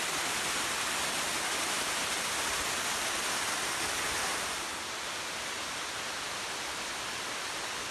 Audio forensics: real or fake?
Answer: real